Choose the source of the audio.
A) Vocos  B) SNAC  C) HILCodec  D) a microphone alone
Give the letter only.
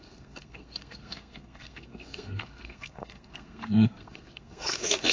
B